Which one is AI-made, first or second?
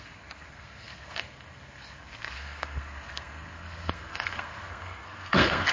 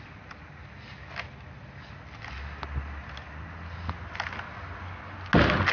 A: first